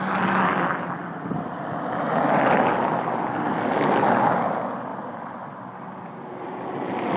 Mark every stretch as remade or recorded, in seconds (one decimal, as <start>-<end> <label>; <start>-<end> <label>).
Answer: 0.0-7.2 recorded